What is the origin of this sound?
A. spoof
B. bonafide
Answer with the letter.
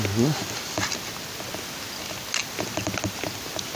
B